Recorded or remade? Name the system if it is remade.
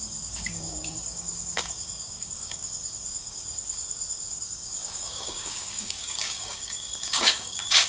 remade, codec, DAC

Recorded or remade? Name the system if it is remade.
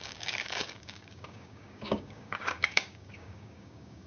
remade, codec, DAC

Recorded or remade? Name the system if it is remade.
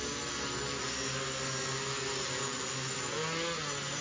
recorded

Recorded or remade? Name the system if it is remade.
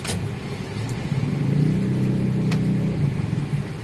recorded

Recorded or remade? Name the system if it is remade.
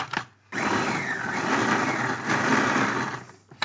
recorded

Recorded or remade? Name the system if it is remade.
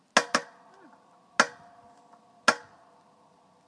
recorded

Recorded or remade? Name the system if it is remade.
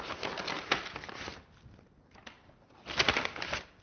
recorded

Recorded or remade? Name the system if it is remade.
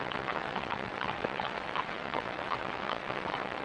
remade, vocoder, WaveNeXt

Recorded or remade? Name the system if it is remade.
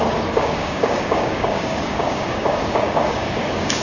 remade, codec, DAC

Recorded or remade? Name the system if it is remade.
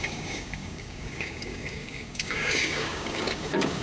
remade, codec, DAC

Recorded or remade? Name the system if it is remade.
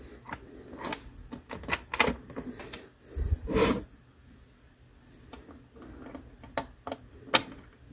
recorded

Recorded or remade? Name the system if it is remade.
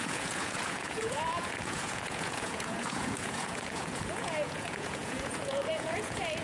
remade, vocoder, Vocos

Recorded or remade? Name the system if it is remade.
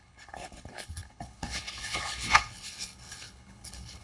remade, codec, HILCodec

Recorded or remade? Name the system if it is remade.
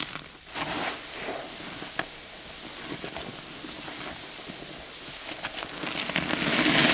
recorded